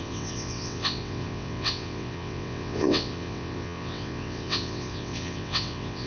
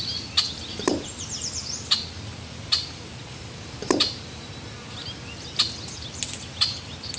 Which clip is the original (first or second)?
second